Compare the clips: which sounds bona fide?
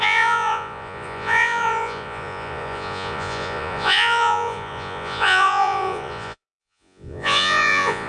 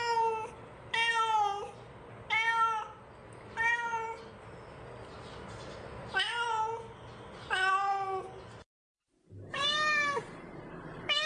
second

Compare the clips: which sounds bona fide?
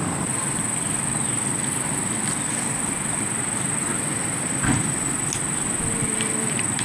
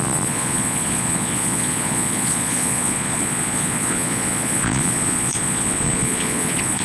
first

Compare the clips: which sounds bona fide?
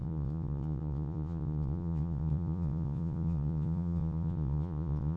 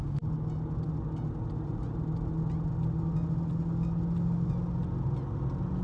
second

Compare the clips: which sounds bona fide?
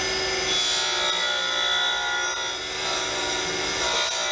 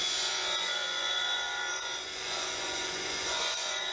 first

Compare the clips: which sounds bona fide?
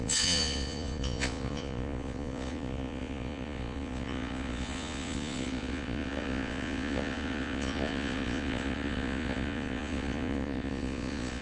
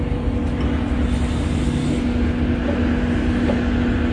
second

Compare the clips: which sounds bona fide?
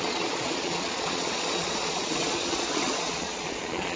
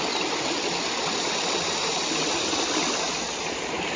second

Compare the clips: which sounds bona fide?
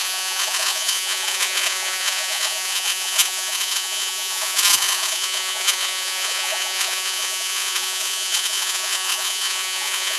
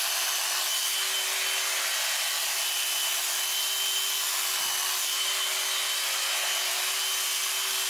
second